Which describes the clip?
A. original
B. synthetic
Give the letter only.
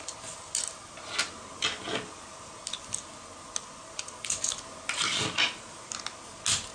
A